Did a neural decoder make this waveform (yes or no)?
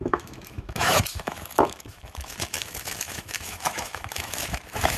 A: yes